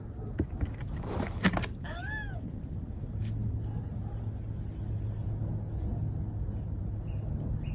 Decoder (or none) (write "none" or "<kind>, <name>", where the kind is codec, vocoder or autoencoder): none